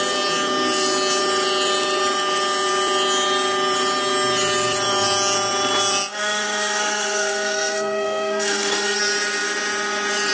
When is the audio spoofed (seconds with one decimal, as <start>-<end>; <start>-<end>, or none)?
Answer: 6.1-9.0